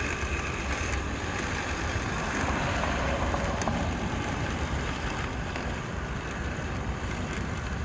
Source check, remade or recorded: remade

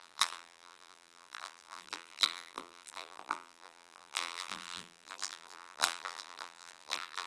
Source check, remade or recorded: remade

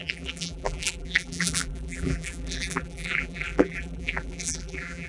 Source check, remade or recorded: remade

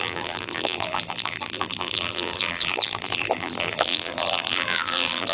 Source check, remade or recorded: remade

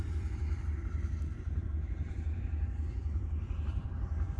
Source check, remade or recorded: remade